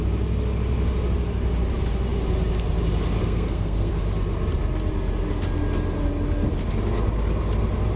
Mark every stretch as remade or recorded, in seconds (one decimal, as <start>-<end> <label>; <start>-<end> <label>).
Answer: 0.0-3.2 recorded; 3.2-3.9 remade; 3.9-8.0 recorded

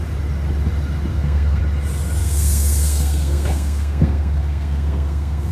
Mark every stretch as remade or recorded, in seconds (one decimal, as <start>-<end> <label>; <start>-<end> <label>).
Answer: 0.0-1.1 recorded; 1.1-1.6 remade; 1.6-2.2 recorded; 2.2-5.5 remade

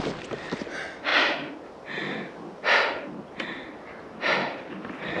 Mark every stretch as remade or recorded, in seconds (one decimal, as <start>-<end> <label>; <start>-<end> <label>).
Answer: 0.0-5.2 recorded

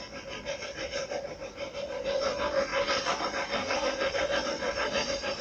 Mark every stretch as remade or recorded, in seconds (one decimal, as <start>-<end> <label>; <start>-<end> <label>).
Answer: 0.0-3.6 recorded; 3.6-4.2 remade; 4.2-5.4 recorded

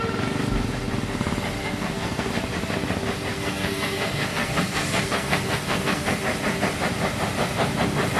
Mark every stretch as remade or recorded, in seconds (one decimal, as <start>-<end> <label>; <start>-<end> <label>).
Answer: 0.0-1.6 recorded; 1.6-2.3 remade; 2.3-3.3 recorded; 3.3-6.2 remade; 6.2-8.2 recorded